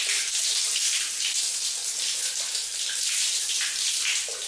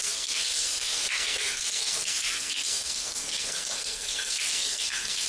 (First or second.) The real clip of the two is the first